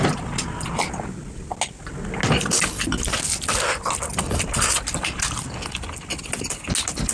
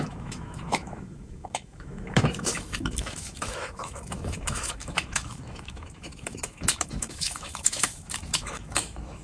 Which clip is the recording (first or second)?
first